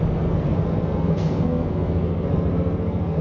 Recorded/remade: remade